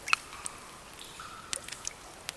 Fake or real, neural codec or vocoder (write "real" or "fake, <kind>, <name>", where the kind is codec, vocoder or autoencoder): real